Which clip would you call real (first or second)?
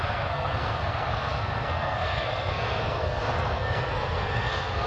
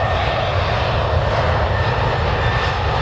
second